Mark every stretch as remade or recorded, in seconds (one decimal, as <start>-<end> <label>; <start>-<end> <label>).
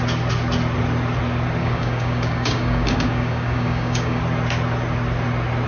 0.0-1.6 recorded; 1.6-4.2 remade; 4.2-5.7 recorded